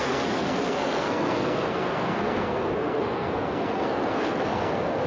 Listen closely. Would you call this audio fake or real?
fake